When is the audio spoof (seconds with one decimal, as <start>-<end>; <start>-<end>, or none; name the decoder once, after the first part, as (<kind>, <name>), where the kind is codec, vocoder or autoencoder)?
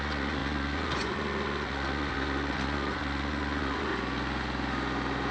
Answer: 0.0-3.9 (vocoder, Vocos)